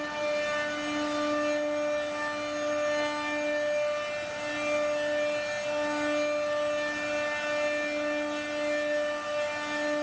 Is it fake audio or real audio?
real